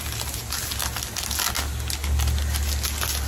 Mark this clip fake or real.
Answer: real